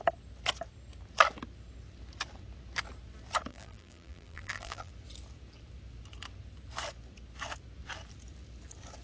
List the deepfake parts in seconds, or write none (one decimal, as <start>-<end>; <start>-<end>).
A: 3.5-4.9